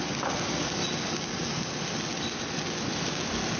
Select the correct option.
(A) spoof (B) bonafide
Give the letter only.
B